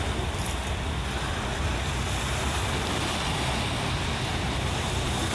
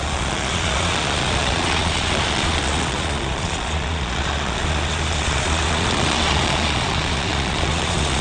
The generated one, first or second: second